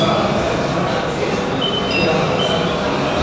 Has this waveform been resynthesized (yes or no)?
no